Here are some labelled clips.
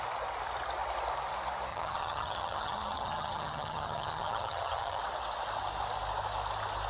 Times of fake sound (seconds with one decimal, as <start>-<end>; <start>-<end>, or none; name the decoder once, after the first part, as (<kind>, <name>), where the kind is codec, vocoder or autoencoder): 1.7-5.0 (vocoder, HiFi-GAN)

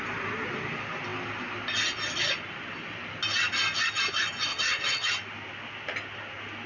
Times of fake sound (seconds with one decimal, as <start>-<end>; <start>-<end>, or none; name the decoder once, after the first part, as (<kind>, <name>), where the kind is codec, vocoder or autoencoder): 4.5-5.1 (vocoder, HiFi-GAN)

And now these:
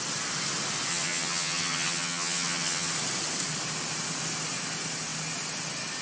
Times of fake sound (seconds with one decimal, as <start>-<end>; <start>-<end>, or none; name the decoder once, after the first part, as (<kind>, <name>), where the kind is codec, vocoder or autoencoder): 0.9-2.9 (vocoder, HiFi-GAN)

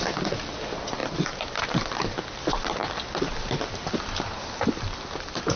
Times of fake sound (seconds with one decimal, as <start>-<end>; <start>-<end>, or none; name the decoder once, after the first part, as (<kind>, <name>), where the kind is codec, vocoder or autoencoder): none

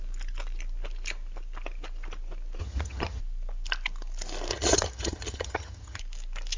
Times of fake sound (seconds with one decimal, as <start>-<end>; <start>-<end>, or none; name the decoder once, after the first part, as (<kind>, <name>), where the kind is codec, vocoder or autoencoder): 2.6-3.2 (vocoder, HiFi-GAN); 4.5-6.0